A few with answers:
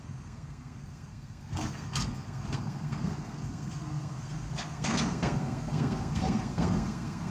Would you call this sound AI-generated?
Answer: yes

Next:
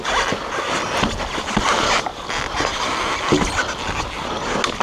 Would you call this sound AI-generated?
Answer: no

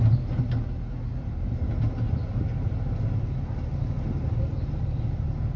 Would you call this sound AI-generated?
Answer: no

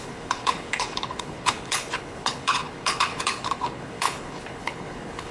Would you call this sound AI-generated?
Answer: yes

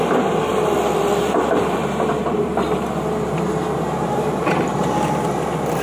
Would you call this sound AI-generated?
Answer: yes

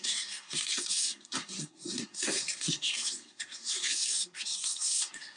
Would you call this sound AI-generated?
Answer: yes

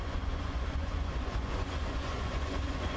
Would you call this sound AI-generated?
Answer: yes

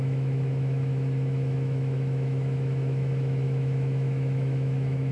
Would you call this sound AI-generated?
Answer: yes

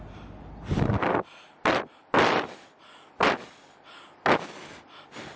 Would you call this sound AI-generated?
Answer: no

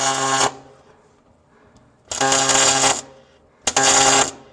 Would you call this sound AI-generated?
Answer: no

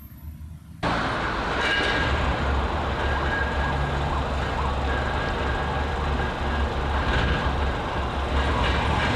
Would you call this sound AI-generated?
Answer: no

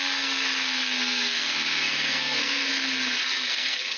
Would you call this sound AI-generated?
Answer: yes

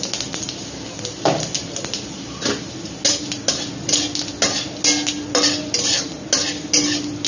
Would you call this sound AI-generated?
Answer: no